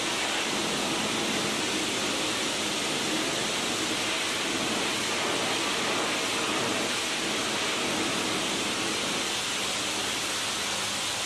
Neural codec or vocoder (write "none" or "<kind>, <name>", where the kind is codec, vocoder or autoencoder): none